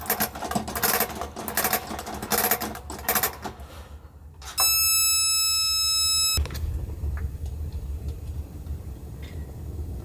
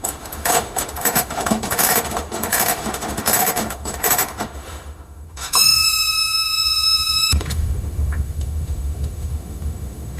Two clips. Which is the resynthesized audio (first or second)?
second